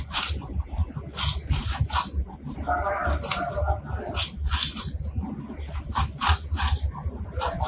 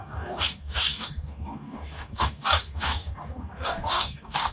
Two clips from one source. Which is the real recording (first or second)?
first